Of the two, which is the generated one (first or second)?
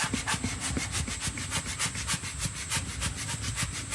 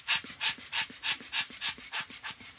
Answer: second